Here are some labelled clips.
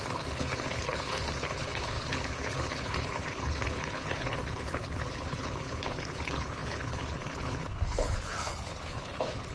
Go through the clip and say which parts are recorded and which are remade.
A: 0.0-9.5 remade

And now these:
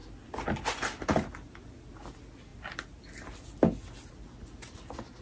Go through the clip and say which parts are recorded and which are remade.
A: 0.0-5.2 recorded

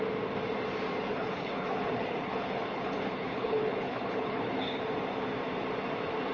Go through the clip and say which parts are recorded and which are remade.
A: 0.0-1.1 recorded; 1.1-4.8 remade; 4.8-6.3 recorded

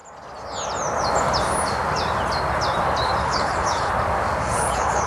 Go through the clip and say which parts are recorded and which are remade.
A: 0.0-3.2 recorded; 3.2-3.9 remade; 3.9-4.4 recorded; 4.4-5.1 remade

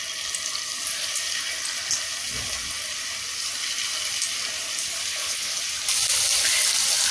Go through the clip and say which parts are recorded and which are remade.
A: 0.0-5.1 recorded; 5.1-5.6 remade; 5.6-7.1 recorded

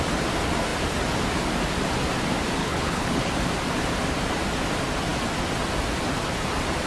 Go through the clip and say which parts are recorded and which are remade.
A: 0.0-2.6 recorded; 2.6-3.3 remade; 3.3-6.9 recorded

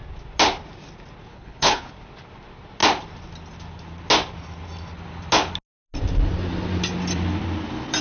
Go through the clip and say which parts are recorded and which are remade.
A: 0.0-1.3 recorded; 1.3-1.9 remade; 1.9-8.0 recorded

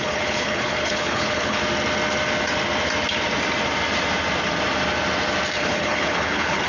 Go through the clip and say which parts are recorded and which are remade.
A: 0.0-1.6 remade; 1.6-5.6 recorded; 5.6-6.7 remade